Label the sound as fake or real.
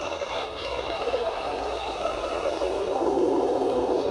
fake